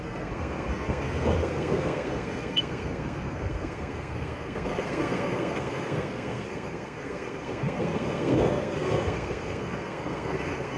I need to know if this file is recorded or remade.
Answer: remade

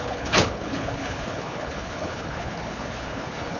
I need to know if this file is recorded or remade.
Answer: remade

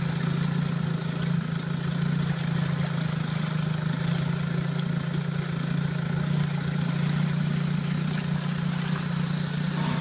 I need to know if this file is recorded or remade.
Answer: recorded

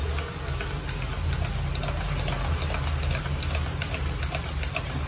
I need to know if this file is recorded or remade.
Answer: recorded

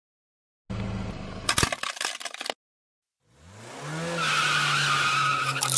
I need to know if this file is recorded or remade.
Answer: recorded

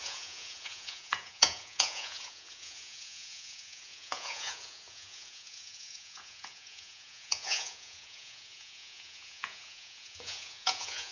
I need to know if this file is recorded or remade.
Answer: remade